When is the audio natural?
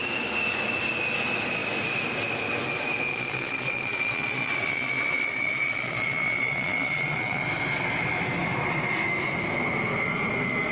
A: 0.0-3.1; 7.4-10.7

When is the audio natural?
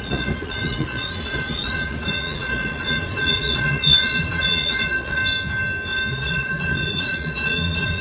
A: 5.2-6.1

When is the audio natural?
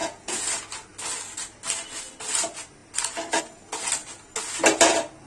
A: 0.5-5.3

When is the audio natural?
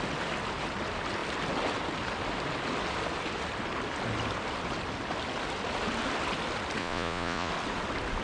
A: 0.0-6.8; 7.5-8.2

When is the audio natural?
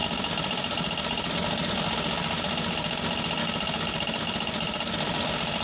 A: 0.0-5.6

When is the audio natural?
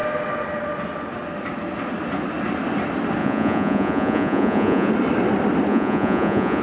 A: 0.0-3.2; 4.9-5.7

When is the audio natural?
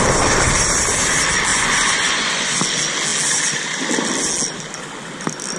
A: 0.0-1.5; 2.6-5.6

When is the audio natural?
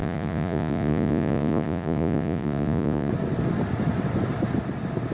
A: 3.1-5.1